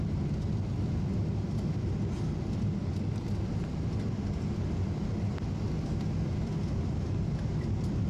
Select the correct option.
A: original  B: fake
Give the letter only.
A